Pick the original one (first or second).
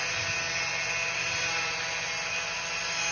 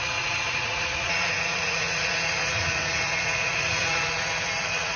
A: first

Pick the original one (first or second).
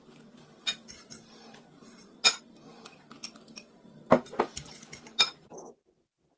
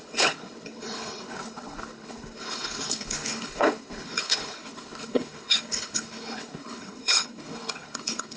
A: first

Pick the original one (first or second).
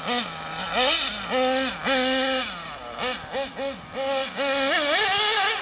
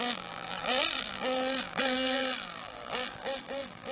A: first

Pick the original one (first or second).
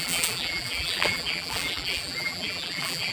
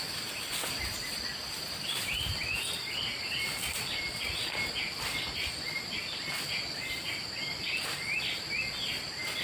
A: second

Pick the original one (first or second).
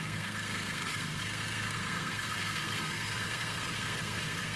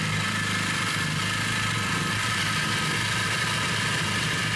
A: second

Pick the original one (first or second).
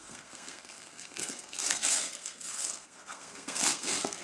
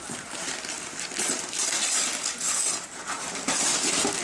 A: second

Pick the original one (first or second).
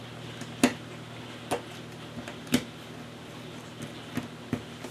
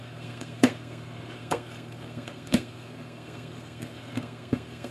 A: first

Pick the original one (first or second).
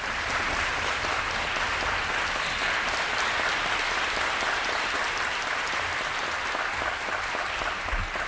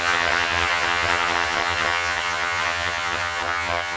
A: first